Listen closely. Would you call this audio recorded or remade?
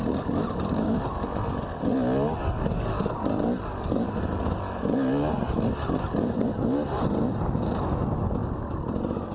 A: recorded